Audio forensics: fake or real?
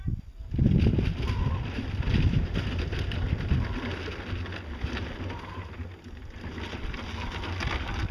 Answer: real